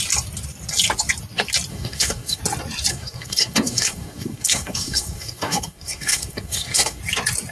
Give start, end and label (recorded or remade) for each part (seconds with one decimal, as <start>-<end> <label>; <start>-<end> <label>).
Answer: 0.0-1.7 recorded; 1.7-2.4 remade; 2.4-2.9 recorded; 2.9-7.0 remade; 7.0-7.5 recorded